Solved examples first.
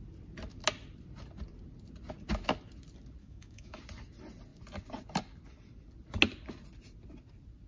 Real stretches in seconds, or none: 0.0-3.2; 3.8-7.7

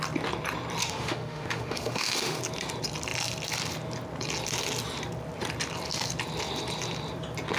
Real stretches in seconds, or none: 0.0-0.8; 2.4-7.6

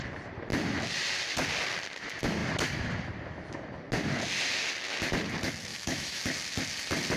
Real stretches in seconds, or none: 0.0-5.7; 6.2-7.2